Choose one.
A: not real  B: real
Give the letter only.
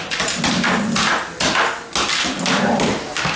B